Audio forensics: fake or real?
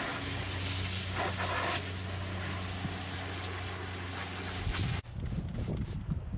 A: real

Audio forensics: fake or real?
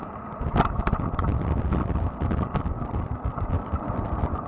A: fake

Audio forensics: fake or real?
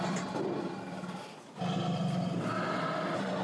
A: real